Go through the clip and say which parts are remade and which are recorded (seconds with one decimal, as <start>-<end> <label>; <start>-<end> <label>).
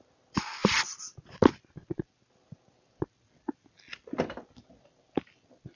0.0-5.8 recorded